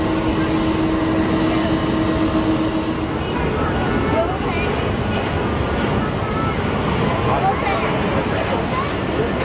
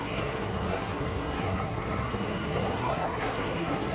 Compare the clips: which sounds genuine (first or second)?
first